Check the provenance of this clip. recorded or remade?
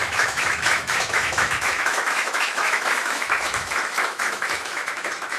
remade